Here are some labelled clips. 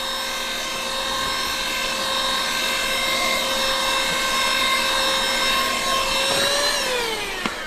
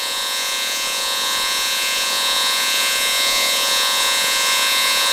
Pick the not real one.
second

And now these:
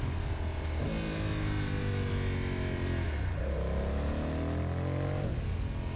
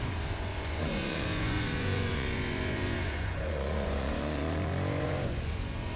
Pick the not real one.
second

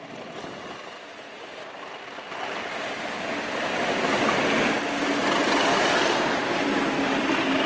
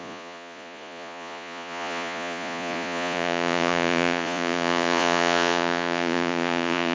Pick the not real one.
second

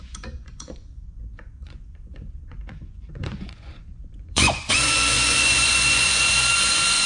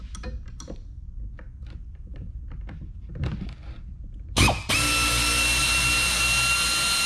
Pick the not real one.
first